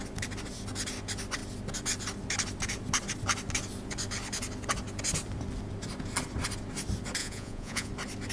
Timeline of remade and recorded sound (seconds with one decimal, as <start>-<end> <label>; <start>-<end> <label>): 0.0-7.2 recorded; 7.2-7.9 remade; 7.9-8.3 recorded